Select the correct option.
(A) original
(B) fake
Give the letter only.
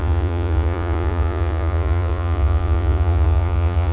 B